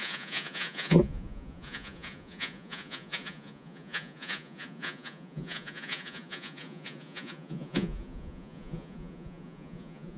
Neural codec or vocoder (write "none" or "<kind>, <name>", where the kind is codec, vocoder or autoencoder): vocoder, Vocos